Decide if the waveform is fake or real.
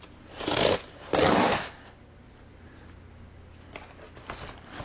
real